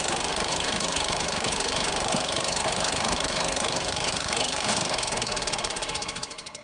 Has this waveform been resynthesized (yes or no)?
yes